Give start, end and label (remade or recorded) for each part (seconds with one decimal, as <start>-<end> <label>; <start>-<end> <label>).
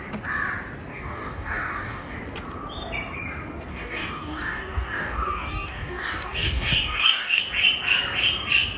0.0-0.9 recorded; 0.9-2.2 remade; 2.2-3.7 recorded; 3.7-7.4 remade; 7.4-8.8 recorded